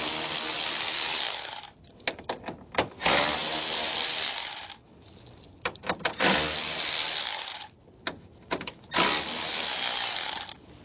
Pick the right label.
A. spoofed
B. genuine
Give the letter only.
B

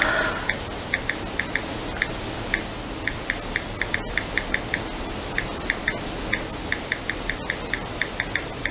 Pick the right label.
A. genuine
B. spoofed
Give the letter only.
A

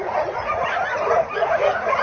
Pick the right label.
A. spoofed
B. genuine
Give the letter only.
A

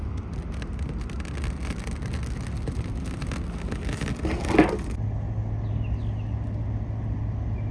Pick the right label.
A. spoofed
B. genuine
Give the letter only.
B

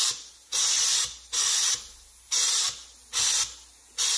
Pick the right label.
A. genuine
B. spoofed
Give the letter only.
A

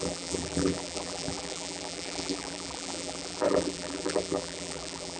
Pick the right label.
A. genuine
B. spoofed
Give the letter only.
B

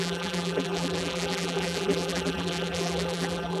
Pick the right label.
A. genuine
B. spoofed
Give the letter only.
B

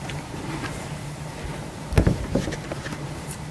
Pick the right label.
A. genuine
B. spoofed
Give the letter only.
B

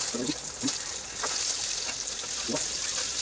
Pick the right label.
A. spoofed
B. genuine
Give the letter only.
B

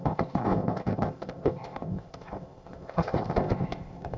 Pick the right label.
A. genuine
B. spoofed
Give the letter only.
B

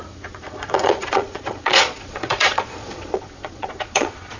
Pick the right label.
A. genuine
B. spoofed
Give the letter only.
B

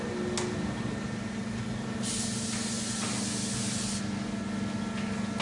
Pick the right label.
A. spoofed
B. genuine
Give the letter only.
B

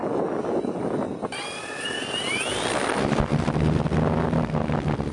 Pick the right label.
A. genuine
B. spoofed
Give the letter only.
A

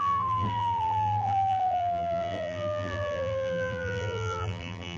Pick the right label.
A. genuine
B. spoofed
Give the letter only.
B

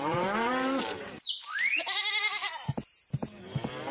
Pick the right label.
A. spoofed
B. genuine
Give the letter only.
A